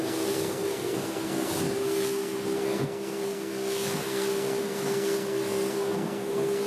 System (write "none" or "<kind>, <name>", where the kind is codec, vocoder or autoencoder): codec, SNAC